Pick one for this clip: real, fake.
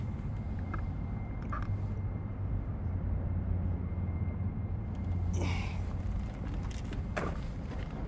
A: real